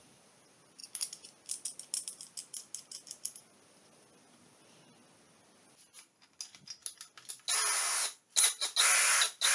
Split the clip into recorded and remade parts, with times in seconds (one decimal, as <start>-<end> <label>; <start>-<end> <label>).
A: 0.0-9.5 recorded